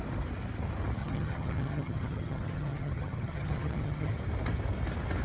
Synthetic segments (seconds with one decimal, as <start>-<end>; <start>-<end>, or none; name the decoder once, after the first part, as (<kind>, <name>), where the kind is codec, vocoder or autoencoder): 1.0-4.1 (vocoder, HiFi-GAN)